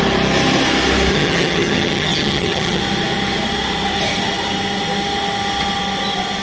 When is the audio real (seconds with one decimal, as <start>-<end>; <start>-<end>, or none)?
0.0-1.1; 2.8-6.4